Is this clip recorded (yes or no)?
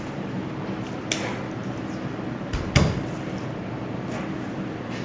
yes